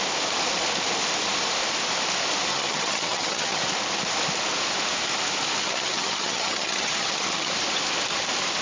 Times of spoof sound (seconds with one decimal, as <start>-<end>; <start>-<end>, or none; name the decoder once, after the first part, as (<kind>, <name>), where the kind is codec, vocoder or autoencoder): 2.5-3.6 (vocoder, HiFi-GAN); 5.6-7.5